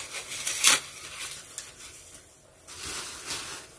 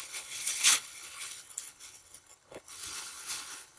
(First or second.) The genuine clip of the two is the first